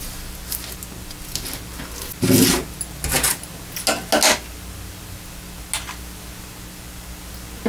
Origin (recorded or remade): recorded